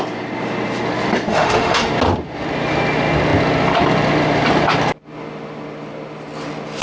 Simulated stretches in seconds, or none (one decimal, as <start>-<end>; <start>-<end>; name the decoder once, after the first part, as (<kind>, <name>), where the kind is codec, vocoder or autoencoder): 1.3-1.9 (autoencoder, DAC-VAE)